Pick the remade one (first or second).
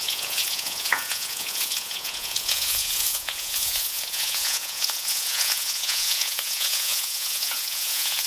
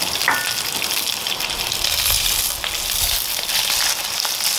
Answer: first